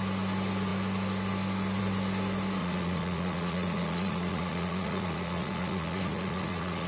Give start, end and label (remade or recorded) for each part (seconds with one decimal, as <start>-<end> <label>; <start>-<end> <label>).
0.0-2.6 recorded; 2.6-6.9 remade